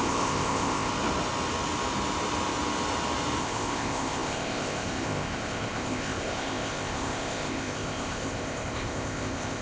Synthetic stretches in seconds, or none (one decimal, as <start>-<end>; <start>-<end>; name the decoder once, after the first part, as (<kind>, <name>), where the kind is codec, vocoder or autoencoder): 0.0-0.9 (codec, ZipCodec); 3.4-9.6